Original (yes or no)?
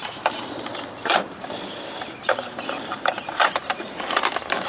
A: no